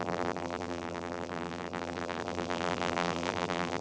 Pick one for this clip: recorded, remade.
remade